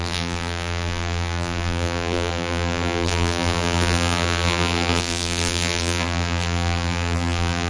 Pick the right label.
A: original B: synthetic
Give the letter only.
B